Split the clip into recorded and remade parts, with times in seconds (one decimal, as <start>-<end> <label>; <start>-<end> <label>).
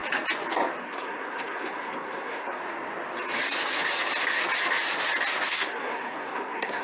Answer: 0.0-0.8 recorded; 0.8-2.6 remade; 2.6-5.5 recorded; 5.5-6.8 remade